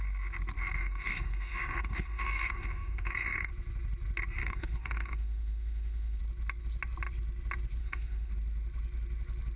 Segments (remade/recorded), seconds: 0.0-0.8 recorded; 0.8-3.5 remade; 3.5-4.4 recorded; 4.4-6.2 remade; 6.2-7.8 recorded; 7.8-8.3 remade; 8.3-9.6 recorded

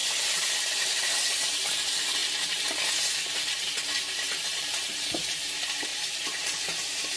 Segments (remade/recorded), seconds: 0.0-0.5 recorded; 0.5-2.2 remade; 2.2-4.5 recorded; 4.5-7.2 remade

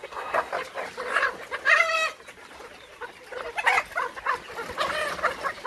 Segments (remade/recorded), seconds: 0.0-0.5 remade; 0.5-5.7 recorded

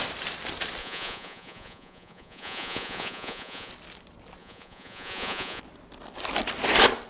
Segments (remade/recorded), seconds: 0.0-0.8 recorded; 0.8-3.7 remade; 3.7-4.4 recorded; 4.4-5.6 remade; 5.6-7.1 recorded

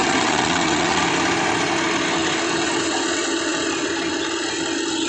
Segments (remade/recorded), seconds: 0.0-1.0 remade; 1.0-5.1 recorded

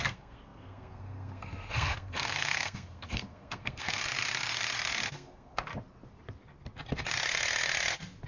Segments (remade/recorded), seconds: 0.0-4.0 remade; 4.0-5.1 recorded; 5.1-5.7 remade; 5.7-8.3 recorded